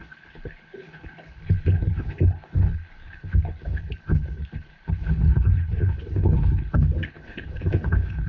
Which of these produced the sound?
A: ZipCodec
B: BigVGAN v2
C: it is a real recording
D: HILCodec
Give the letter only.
D